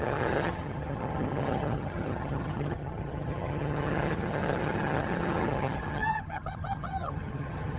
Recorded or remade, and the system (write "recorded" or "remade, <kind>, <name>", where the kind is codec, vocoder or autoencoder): remade, vocoder, HiFi-GAN